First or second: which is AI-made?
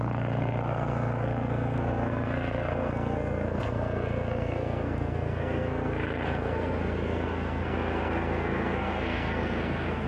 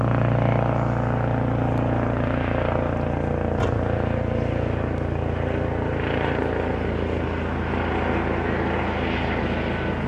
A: first